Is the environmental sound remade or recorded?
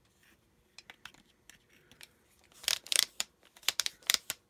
remade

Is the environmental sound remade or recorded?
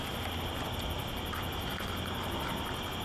recorded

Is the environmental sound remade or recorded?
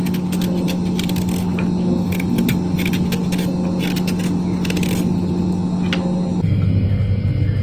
recorded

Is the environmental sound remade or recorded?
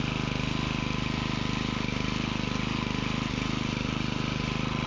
recorded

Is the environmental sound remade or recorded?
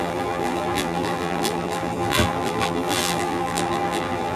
remade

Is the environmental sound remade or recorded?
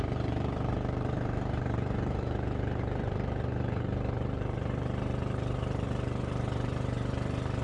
remade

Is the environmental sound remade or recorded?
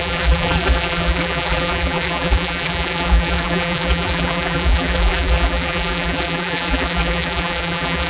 remade